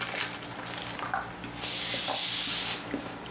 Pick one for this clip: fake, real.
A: real